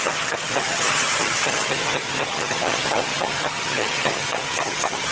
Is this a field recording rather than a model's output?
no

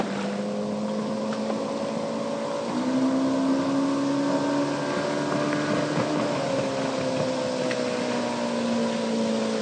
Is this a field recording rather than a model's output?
yes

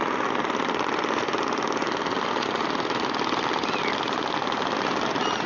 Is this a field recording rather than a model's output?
yes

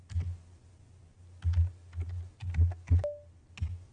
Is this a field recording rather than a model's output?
yes